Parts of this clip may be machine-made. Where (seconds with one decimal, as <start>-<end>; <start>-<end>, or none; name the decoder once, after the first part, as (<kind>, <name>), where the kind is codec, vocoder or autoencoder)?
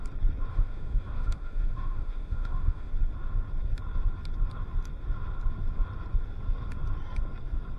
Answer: 0.5-2.9 (autoencoder, DAC-VAE)